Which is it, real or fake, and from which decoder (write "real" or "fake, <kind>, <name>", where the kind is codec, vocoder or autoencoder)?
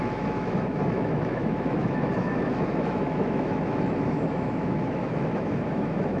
fake, autoencoder, DAC-VAE